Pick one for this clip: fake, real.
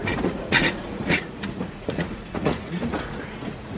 fake